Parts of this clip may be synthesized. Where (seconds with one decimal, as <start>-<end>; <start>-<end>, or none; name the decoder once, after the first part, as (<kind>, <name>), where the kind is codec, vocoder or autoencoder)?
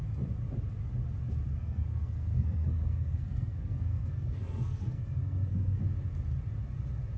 1.5-5.8 (codec, SNAC)